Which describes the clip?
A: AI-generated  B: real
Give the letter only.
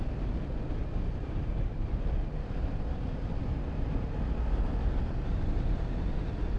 B